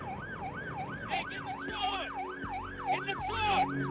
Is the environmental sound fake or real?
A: real